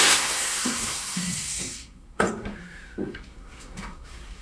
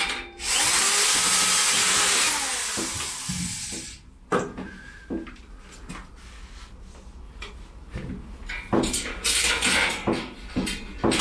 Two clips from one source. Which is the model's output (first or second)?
first